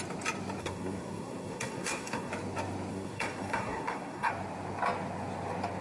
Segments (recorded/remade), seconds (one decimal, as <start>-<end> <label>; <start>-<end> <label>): 0.0-0.6 recorded; 0.6-2.3 remade; 2.3-2.9 recorded; 2.9-4.3 remade; 4.3-5.8 recorded

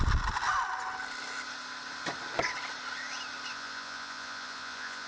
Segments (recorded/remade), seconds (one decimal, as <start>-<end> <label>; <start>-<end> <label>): 0.0-3.5 recorded; 3.5-5.1 remade

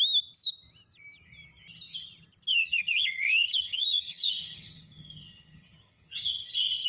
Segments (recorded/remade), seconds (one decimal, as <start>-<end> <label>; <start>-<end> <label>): 0.0-2.5 recorded; 2.5-6.9 remade